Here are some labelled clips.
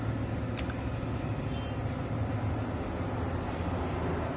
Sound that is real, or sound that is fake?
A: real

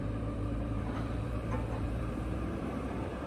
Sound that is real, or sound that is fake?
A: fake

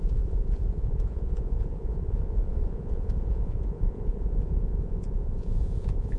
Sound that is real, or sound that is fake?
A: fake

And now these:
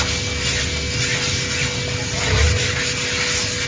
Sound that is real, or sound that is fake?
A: real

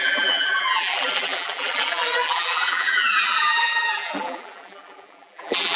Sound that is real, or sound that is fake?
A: fake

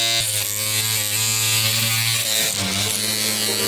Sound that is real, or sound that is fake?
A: real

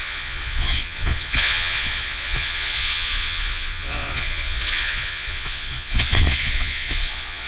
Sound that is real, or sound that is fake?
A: fake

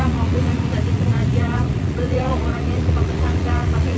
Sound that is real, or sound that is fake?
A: fake